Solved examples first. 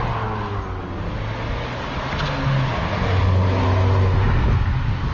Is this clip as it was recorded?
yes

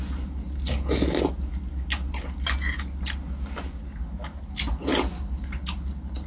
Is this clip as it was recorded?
yes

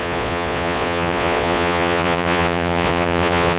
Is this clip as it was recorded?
no